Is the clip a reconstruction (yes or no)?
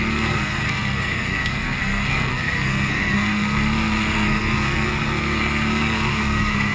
yes